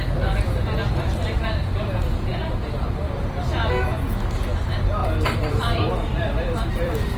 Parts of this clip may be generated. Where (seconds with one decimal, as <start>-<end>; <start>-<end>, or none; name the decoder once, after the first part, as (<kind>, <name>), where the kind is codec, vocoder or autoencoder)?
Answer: 2.3-3.2 (vocoder, BigVGAN v2); 5.0-7.2